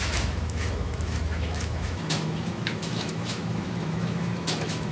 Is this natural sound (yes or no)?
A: no